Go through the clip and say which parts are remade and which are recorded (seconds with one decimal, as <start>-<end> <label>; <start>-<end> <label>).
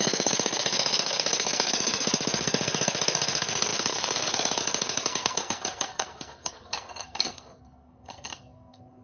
0.0-9.0 remade